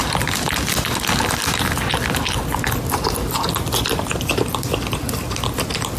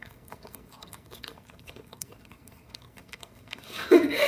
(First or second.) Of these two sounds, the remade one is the second